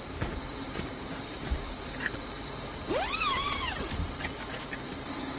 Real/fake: fake